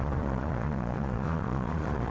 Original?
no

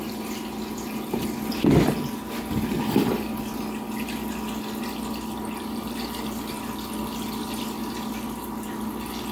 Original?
yes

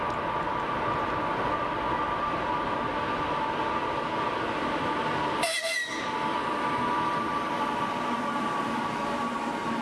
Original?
yes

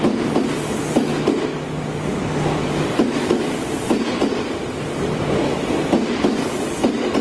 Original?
yes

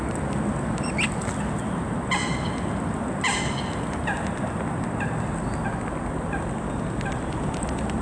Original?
yes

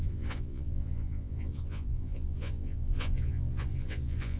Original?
no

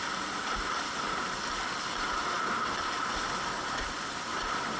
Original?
yes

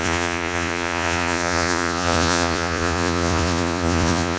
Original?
no